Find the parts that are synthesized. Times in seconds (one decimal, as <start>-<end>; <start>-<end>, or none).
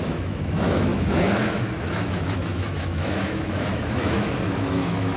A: 0.0-5.2